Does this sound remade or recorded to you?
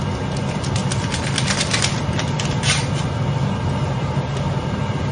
recorded